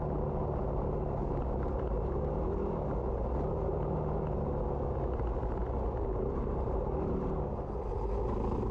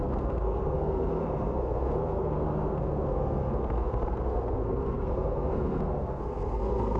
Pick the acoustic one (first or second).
first